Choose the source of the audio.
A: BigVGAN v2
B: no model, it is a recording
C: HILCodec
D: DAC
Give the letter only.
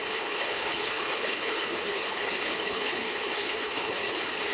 C